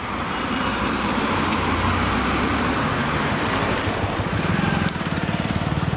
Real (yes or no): no